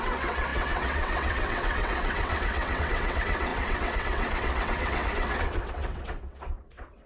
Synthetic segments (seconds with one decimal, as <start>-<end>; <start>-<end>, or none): 0.0-7.1